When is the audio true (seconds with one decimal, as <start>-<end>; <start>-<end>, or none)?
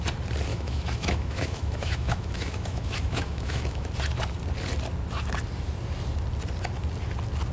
0.0-0.5; 3.9-7.5